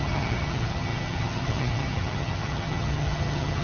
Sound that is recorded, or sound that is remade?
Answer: remade